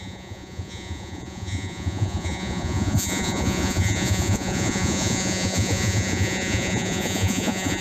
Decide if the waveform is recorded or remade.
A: remade